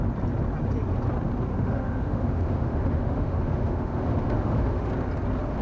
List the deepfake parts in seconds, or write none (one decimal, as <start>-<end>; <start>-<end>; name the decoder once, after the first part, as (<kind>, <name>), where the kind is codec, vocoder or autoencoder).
1.5-4.9 (autoencoder, DAC-VAE)